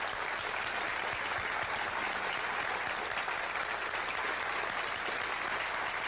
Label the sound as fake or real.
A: real